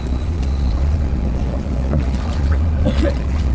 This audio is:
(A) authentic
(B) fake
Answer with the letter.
B